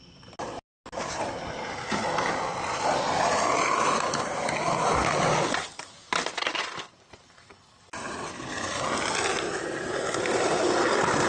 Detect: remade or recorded recorded